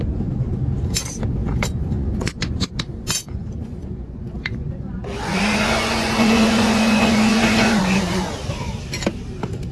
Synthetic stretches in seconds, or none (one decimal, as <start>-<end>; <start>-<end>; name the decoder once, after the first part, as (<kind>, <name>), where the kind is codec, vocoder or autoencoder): 1.4-2.8 (vocoder, Vocos); 3.2-8.3